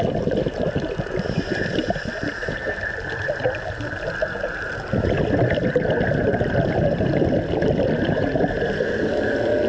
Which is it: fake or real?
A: real